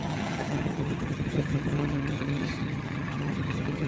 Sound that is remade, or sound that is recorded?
remade